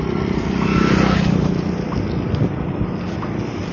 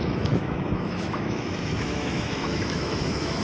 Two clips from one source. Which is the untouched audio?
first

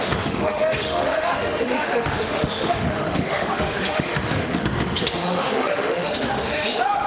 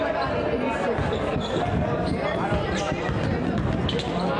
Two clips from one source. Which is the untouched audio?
second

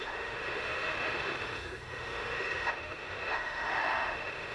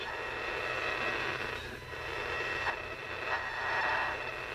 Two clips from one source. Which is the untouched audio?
second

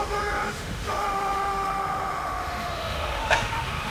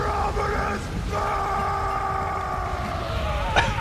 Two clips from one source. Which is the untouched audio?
second